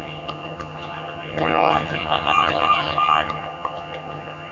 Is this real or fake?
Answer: fake